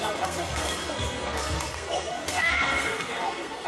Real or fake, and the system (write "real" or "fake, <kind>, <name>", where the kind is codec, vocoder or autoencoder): fake, codec, SNAC